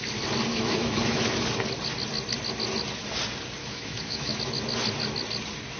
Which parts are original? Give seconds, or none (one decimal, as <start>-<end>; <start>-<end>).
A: 0.0-0.5; 1.2-3.6; 4.4-5.8